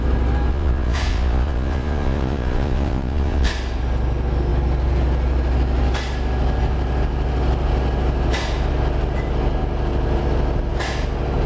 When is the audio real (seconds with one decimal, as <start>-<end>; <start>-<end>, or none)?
0.0-0.5; 3.5-11.5